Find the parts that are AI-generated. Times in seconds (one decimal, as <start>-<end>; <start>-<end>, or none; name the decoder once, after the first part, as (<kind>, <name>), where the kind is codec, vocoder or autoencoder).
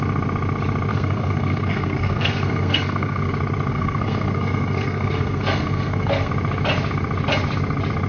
0.9-3.3 (codec, SNAC); 3.7-6.3